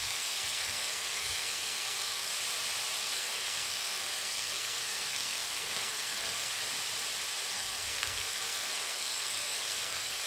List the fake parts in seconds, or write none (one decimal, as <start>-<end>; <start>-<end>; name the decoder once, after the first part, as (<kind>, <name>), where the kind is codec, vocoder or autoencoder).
0.0-2.3 (codec, SNAC); 3.0-6.6; 7.5-10.3